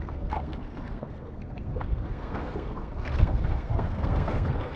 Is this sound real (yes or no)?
no